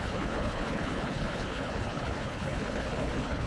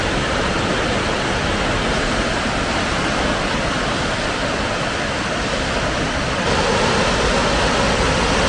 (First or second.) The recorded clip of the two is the second